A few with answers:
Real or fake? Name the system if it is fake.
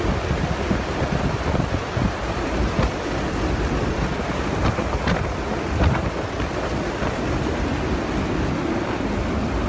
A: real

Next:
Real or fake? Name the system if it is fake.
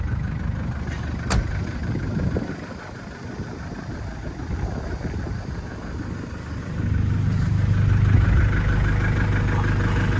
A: real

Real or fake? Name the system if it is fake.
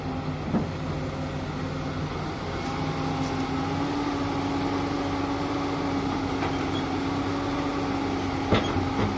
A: real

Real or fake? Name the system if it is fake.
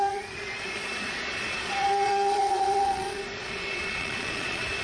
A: fake, vocoder, Vocos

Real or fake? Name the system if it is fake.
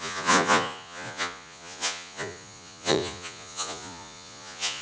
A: fake, vocoder, Vocos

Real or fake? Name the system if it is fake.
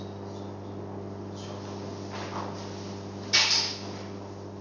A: real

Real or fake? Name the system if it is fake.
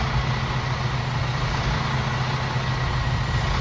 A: real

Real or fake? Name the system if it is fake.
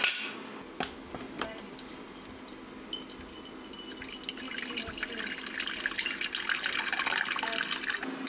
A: real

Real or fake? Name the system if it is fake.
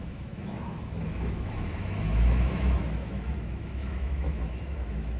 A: fake, autoencoder, DAC-VAE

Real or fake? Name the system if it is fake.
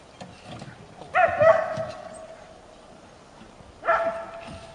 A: real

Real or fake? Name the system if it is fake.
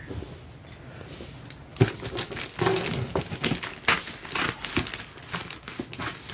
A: real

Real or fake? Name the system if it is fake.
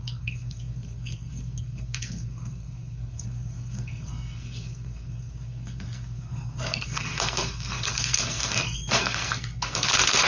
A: fake, codec, SNAC